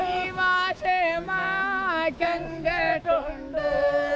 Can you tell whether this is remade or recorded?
remade